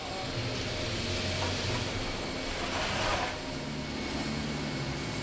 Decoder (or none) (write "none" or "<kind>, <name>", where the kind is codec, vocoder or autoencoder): none